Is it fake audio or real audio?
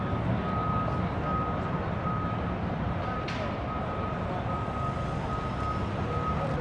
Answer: real